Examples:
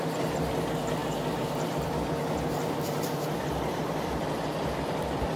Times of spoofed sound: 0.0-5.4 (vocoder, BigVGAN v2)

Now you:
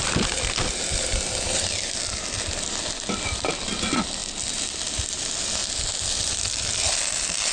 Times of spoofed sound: none

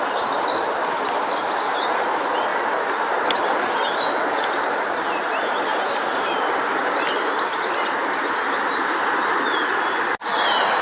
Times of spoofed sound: 5.7-6.4 (vocoder, BigVGAN v2)

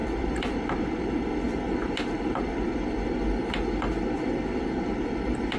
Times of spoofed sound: 0.0-0.6 (vocoder, BigVGAN v2)

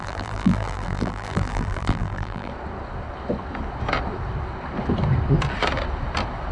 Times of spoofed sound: 0.0-2.5 (vocoder, BigVGAN v2)

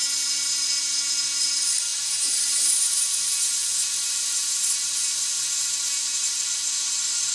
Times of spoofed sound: none